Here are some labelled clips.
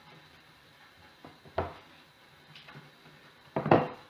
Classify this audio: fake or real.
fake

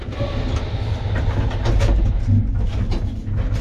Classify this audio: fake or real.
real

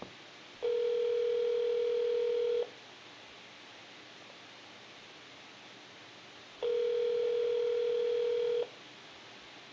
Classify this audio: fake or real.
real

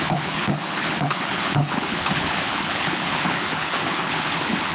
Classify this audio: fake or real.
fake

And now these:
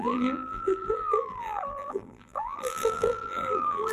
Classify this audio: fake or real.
fake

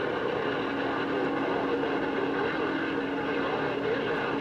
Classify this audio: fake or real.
real